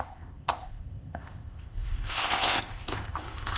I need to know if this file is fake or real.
fake